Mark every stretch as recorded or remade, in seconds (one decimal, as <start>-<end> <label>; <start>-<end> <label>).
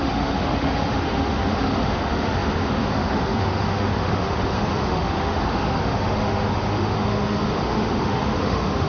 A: 0.0-8.9 remade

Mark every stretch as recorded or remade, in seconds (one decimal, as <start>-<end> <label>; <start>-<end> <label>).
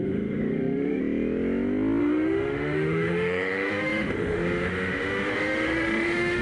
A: 0.0-1.0 remade; 1.0-2.0 recorded; 2.0-6.4 remade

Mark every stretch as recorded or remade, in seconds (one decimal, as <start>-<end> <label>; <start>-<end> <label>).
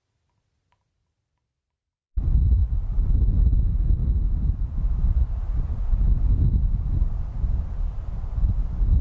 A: 0.0-9.0 recorded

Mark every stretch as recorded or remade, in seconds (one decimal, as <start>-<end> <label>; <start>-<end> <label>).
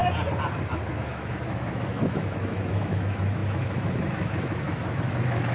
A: 0.0-0.9 recorded; 0.9-5.5 remade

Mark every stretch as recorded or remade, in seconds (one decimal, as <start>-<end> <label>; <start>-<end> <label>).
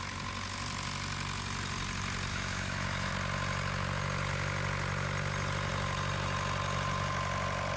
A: 0.0-2.3 recorded; 2.3-3.1 remade; 3.1-7.8 recorded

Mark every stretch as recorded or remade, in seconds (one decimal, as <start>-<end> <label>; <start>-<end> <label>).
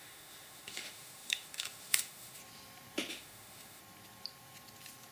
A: 0.0-2.4 remade; 2.4-3.1 recorded; 3.1-3.8 remade; 3.8-5.1 recorded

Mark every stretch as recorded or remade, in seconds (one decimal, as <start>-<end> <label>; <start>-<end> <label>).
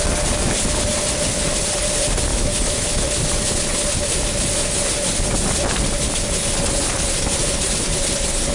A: 0.0-2.3 recorded; 2.3-2.9 remade; 2.9-8.5 recorded